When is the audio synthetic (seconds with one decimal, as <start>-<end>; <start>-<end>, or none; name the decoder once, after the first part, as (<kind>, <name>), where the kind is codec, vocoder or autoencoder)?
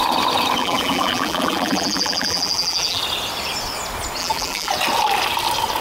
0.6-3.0 (vocoder, BigVGAN v2); 4.2-4.7